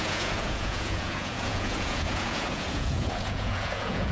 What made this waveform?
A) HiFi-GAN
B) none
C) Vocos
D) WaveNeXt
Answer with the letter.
C